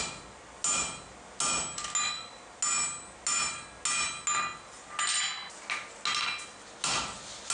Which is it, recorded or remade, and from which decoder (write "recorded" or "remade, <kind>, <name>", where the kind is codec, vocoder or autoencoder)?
recorded